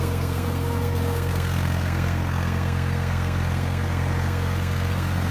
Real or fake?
fake